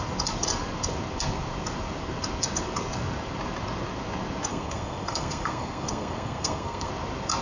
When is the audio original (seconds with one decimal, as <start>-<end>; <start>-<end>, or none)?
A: 0.0-4.5; 6.9-7.4